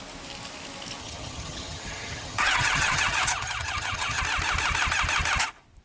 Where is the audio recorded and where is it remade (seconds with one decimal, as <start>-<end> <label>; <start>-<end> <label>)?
0.0-1.0 recorded; 1.0-4.2 remade; 4.2-5.8 recorded

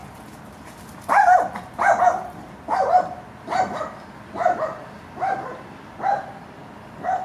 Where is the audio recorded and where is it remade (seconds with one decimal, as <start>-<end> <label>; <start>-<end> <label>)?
0.0-7.2 recorded

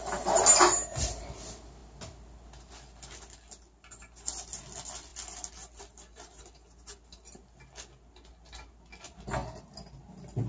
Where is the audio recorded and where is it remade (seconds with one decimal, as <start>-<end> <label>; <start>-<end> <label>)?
0.0-10.5 recorded

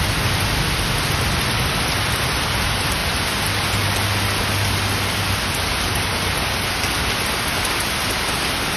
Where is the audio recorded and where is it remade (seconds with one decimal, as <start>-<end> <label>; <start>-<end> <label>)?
0.0-3.0 remade; 3.0-7.0 recorded; 7.0-8.8 remade